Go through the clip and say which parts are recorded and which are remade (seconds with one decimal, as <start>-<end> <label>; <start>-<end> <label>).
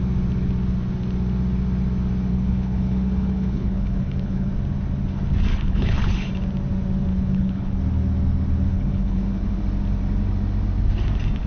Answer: 0.0-2.3 recorded; 2.3-4.5 remade; 4.5-5.5 recorded; 5.5-6.3 remade; 6.3-7.1 recorded; 7.1-7.8 remade; 7.8-8.7 recorded; 8.7-9.6 remade; 9.6-11.5 recorded